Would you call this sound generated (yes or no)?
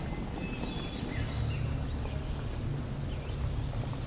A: no